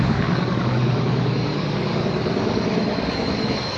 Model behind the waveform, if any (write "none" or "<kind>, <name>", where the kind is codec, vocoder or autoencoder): codec, DAC